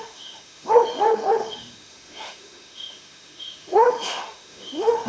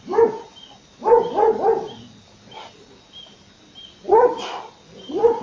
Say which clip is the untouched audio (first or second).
second